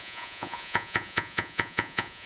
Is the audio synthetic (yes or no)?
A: yes